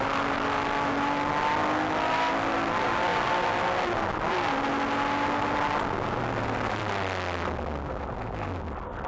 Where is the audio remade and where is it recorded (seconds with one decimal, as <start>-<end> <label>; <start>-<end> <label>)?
0.0-9.1 recorded